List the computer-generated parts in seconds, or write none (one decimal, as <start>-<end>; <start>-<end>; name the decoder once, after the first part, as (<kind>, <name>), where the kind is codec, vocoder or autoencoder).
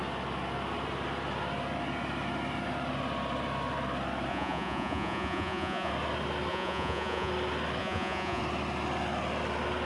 4.3-5.9 (vocoder, Vocos); 6.5-7.3; 7.8-8.4